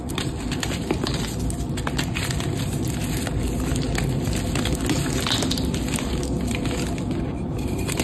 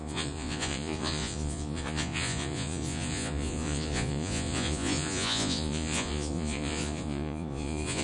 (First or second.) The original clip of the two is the first